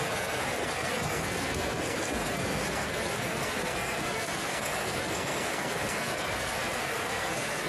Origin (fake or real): fake